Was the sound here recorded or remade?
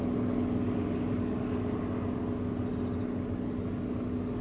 recorded